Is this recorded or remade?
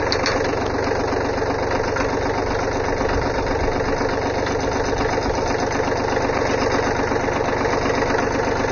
recorded